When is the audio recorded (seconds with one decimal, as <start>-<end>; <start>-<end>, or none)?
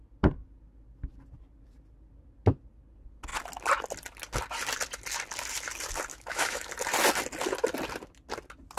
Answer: 0.0-6.1; 6.7-8.8